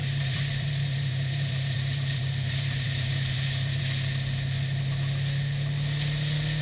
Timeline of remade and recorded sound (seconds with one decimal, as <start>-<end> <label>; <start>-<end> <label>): 0.0-3.8 remade; 3.8-6.6 recorded